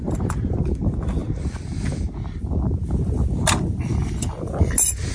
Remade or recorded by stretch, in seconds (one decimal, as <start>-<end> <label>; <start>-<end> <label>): 0.0-5.1 recorded